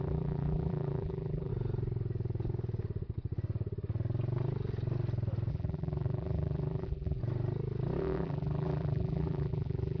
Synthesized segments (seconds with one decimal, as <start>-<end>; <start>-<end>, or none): 0.0-1.5; 5.5-7.2; 8.0-10.0